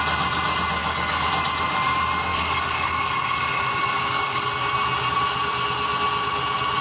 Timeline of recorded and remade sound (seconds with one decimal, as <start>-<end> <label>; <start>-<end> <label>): 0.0-0.8 recorded; 0.8-1.3 remade; 1.3-2.3 recorded; 2.3-4.5 remade; 4.5-6.8 recorded